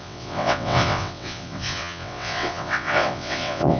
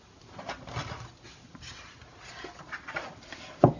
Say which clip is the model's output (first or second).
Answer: first